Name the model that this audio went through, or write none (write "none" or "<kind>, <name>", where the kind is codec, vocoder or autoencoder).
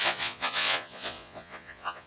vocoder, Vocos